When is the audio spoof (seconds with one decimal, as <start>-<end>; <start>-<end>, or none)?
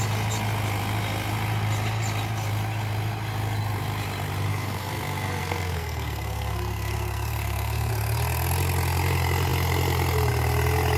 4.5-7.9